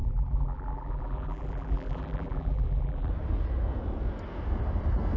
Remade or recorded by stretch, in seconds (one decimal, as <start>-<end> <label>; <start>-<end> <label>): 0.0-3.1 remade; 3.1-5.2 recorded